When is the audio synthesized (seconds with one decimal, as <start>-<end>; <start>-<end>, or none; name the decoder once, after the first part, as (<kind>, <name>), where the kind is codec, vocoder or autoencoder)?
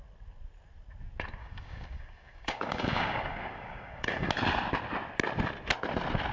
1.4-4.3 (codec, DAC)